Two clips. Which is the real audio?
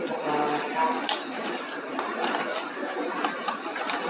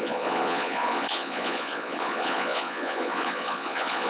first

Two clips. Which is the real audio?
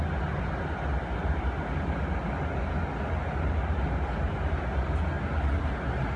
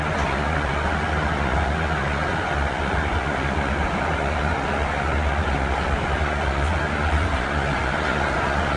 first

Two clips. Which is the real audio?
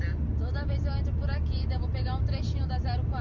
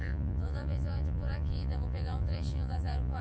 first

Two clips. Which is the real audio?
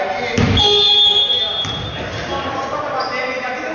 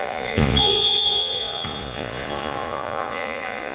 first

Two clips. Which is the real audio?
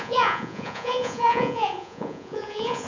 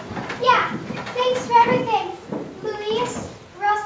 second